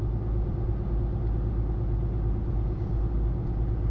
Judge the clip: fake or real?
real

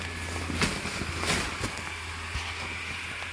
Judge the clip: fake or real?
real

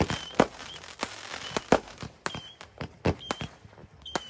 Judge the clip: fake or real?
real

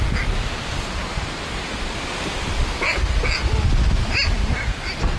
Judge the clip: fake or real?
real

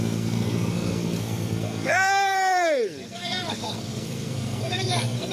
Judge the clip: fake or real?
fake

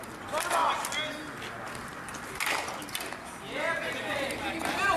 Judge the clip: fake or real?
real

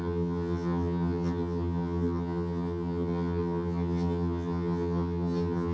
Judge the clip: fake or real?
fake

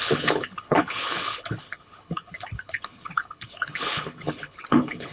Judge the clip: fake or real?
fake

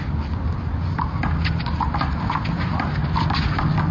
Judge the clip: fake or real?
real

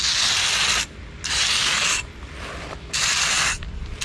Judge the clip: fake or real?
real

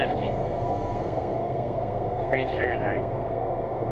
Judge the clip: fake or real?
fake